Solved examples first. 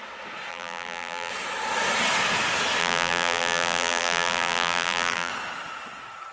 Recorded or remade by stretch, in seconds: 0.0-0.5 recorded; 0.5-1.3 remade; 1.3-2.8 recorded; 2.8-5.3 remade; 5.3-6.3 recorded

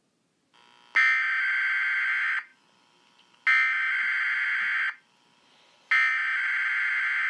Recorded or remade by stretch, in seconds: 0.0-7.3 recorded

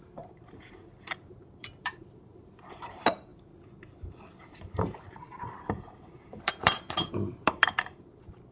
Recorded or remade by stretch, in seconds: 0.0-0.8 remade; 0.8-1.4 recorded; 1.4-3.3 remade; 3.3-4.4 recorded; 4.4-8.5 remade

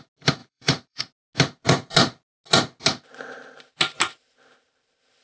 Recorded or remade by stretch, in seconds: 0.0-0.4 recorded; 0.4-1.0 remade; 1.0-5.2 recorded

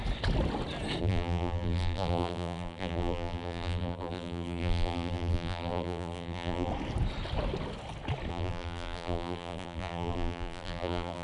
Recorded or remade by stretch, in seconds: 0.0-1.0 recorded; 1.0-6.7 remade; 6.7-8.3 recorded; 8.3-11.2 remade